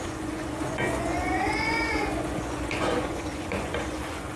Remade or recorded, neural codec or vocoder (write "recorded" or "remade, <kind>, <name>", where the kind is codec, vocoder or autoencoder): remade, vocoder, Vocos